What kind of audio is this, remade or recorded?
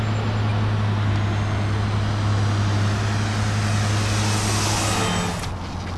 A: recorded